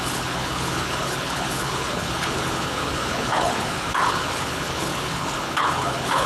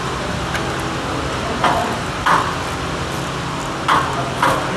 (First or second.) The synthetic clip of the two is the first